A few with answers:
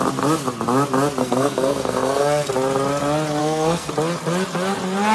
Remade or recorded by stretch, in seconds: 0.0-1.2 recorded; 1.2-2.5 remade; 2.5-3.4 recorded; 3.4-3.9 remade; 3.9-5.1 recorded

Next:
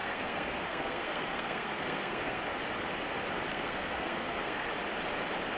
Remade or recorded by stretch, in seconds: 0.0-2.4 remade; 2.4-3.5 recorded; 3.5-4.7 remade; 4.7-5.6 recorded

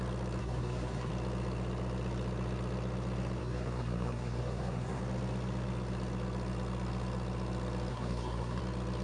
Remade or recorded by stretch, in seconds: 0.0-0.4 recorded; 0.4-1.1 remade; 1.1-3.4 recorded; 3.4-5.0 remade; 5.0-7.9 recorded; 7.9-8.6 remade; 8.6-9.0 recorded

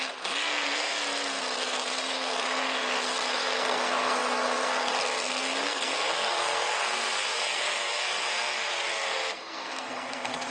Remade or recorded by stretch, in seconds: 0.0-0.9 remade; 0.9-1.6 recorded; 1.6-10.5 remade

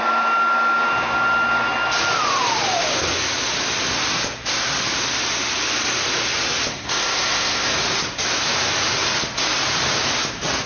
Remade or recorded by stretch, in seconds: 0.0-6.7 recorded; 6.7-7.7 remade; 7.7-10.7 recorded

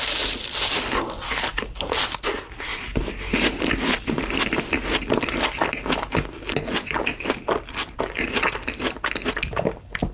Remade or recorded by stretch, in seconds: 0.0-10.1 recorded

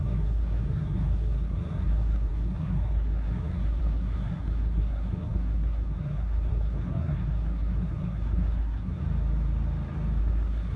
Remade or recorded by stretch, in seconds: 0.0-9.0 remade; 9.0-10.2 recorded; 10.2-10.8 remade

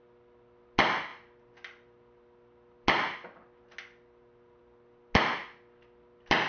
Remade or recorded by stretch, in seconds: 0.0-6.5 recorded